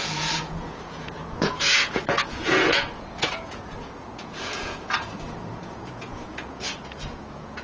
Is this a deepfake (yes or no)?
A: yes